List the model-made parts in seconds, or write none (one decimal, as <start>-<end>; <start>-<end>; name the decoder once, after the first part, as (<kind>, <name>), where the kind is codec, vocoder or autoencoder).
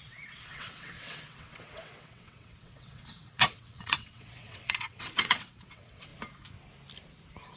0.0-6.1 (vocoder, WaveNeXt)